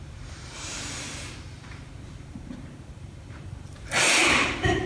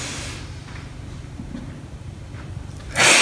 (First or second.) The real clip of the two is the second